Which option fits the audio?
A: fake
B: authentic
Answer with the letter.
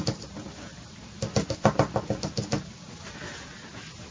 B